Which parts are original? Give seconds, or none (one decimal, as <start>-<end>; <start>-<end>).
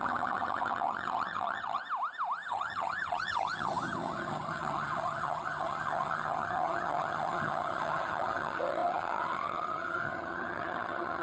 1.8-2.5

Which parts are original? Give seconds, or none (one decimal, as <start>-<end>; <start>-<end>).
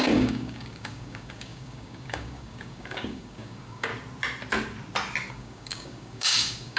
3.9-5.3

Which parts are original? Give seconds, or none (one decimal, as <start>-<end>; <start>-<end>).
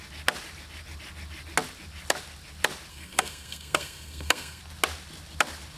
0.0-2.9; 4.6-5.8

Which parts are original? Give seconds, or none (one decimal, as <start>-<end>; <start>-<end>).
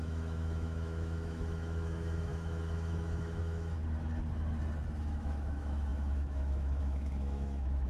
3.8-5.0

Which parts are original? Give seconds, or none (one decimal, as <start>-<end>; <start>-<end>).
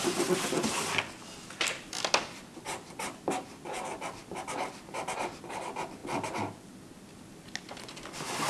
0.0-8.5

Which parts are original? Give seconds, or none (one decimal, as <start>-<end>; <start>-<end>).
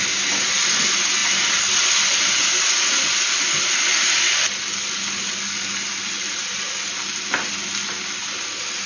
0.0-8.9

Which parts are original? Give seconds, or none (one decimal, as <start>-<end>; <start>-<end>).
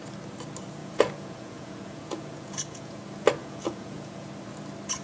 0.0-0.8; 3.0-3.4; 4.3-5.0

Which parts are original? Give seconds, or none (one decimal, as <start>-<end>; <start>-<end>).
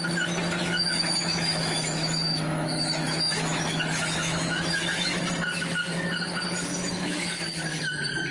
0.0-0.6; 5.2-6.7; 7.4-8.3